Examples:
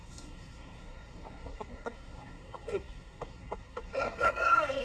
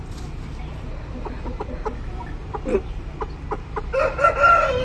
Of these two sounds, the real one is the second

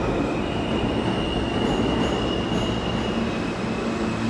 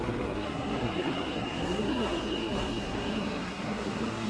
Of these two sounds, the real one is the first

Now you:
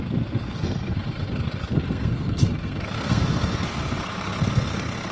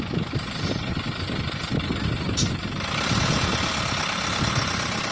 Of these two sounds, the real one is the second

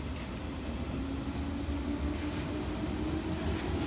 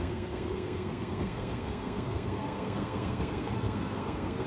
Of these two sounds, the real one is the first